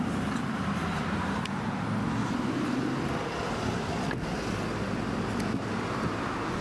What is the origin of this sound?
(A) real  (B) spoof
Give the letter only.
A